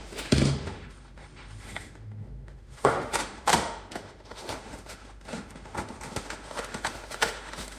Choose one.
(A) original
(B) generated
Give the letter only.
B